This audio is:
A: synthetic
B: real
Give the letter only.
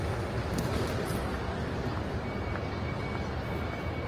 B